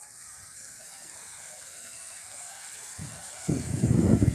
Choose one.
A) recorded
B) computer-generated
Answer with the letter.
B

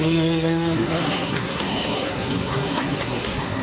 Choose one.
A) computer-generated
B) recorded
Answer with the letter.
A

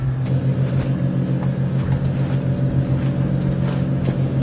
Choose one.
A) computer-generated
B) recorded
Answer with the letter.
B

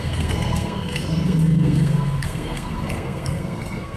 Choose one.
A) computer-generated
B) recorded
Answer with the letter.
A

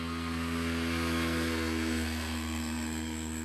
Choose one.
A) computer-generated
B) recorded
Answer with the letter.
A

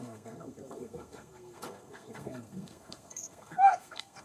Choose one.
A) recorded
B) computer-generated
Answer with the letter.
B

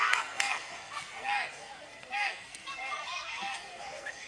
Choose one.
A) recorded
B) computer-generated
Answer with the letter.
B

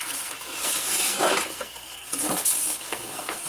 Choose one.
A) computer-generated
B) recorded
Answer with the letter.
A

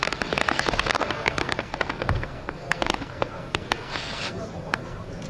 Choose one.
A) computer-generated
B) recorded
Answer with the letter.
A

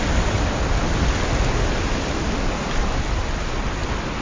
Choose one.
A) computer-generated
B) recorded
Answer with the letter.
B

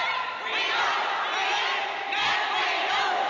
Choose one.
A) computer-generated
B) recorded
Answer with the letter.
B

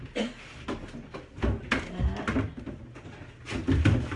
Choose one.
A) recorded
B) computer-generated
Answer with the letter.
A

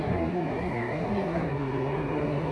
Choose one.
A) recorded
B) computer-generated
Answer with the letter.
B